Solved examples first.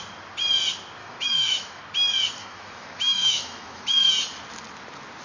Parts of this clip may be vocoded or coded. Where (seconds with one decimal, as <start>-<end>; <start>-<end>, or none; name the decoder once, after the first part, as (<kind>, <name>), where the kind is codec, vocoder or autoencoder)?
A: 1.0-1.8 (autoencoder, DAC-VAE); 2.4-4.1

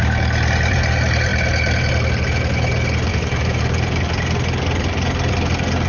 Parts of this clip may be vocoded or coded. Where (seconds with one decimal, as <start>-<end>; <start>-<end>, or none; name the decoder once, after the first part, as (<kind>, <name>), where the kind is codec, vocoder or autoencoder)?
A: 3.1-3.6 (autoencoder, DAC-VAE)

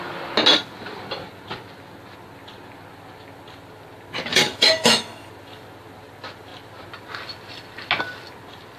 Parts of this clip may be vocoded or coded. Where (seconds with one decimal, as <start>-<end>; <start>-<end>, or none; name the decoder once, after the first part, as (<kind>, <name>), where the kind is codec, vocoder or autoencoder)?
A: 4.3-5.3 (autoencoder, DAC-VAE)